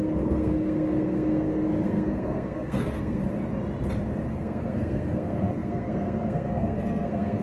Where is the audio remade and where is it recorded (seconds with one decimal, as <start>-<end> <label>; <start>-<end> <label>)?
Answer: 0.0-3.2 remade; 3.2-4.3 recorded; 4.3-7.4 remade